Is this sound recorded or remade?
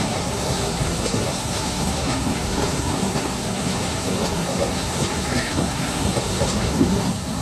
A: remade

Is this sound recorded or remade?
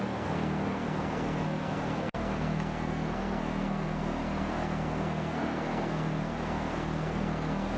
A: remade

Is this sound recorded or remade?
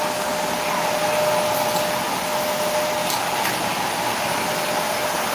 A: recorded